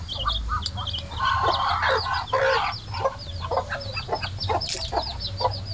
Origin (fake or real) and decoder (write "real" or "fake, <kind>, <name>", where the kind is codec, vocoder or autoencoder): real